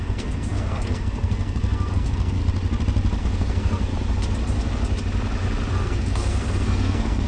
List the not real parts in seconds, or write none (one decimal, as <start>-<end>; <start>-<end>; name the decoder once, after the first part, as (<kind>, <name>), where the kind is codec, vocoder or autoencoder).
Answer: 0.0-2.4 (codec, SNAC); 3.2-3.9; 5.7-7.3